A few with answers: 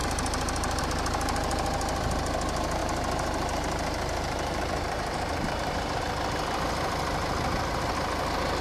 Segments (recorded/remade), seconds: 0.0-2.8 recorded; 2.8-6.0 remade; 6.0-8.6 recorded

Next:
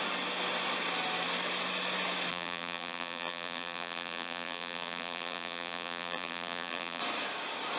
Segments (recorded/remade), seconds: 0.0-2.3 recorded; 2.3-7.0 remade; 7.0-7.8 recorded